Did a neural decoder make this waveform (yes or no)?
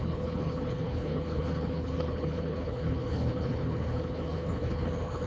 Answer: yes